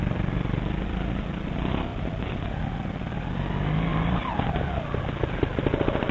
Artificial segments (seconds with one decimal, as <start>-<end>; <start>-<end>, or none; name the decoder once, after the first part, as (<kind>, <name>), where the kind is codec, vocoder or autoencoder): 1.9-3.3 (vocoder, BigVGAN v2); 3.9-4.5